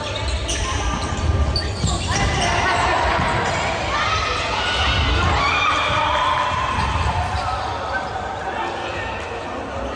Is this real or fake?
real